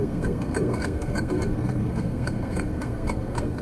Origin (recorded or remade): remade